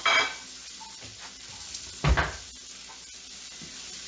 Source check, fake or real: real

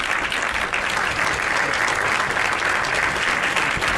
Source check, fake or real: real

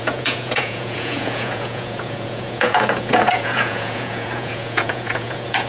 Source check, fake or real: fake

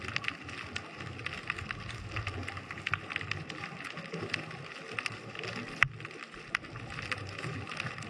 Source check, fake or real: real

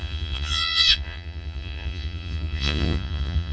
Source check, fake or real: fake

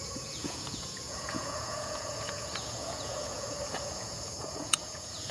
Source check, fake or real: fake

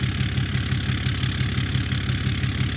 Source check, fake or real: real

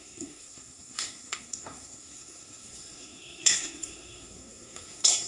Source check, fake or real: fake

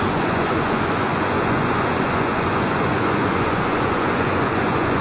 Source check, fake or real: fake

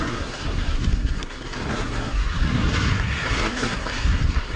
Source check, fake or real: fake